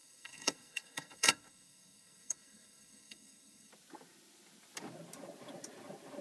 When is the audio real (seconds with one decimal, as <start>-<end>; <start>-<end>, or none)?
3.7-6.2

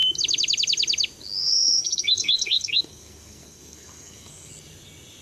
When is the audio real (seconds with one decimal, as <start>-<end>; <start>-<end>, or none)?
0.0-1.4; 4.5-5.2

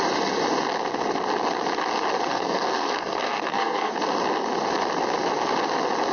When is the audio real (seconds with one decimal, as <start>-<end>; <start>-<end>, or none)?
0.0-2.3; 3.9-6.1

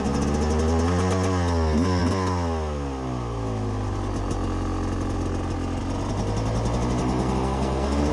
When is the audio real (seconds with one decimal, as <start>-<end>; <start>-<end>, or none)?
0.0-7.0

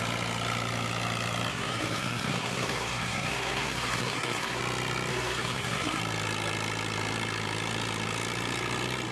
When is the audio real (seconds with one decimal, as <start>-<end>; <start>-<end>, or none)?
0.0-1.5; 4.6-5.1; 6.0-9.1

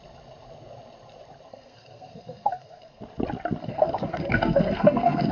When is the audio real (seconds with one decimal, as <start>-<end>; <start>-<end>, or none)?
0.0-1.5; 3.0-3.6

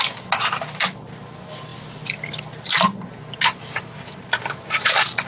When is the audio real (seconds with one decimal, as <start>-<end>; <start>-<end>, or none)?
0.0-5.3